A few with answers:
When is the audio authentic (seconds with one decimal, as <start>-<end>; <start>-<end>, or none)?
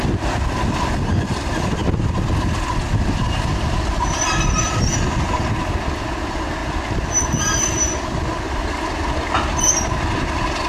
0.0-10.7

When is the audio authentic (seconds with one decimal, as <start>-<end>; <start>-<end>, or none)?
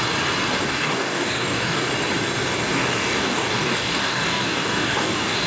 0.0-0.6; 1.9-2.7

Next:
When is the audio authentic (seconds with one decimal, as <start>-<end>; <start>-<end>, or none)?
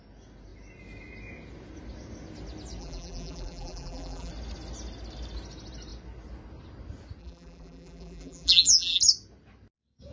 0.0-2.8; 4.3-7.2; 9.0-10.1